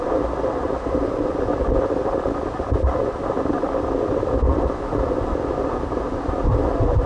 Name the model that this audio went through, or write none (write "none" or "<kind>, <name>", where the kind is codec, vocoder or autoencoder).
vocoder, BigVGAN v2